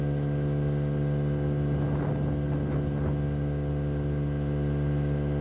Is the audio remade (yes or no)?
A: no